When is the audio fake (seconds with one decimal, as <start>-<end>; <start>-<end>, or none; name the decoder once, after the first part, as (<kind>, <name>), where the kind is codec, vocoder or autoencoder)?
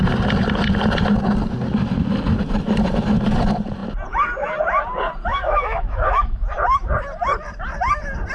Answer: 5.3-6.4 (autoencoder, DAC-VAE)